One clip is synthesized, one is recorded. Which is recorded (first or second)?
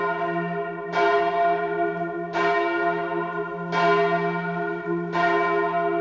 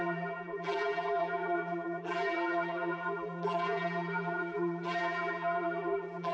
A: first